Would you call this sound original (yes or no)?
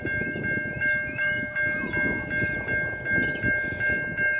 yes